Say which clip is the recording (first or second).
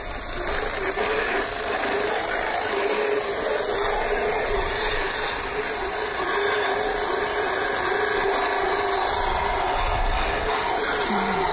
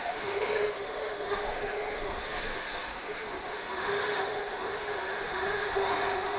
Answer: first